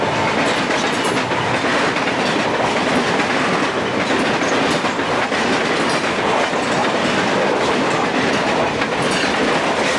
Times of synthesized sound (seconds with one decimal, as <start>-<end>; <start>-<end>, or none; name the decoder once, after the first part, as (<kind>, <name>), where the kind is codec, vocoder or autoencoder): none